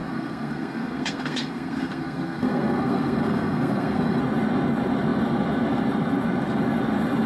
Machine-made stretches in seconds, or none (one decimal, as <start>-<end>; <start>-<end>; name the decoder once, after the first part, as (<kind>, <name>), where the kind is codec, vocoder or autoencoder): 0.0-4.2 (codec, SNAC)